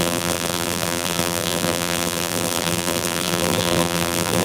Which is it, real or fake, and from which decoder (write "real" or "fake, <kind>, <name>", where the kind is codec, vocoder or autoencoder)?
fake, vocoder, BigVGAN v2